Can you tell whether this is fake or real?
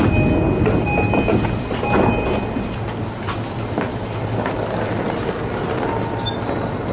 real